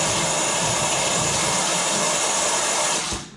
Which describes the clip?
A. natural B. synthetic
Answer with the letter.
A